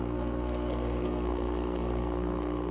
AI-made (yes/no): yes